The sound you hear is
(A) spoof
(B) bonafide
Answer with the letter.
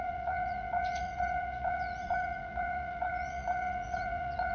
A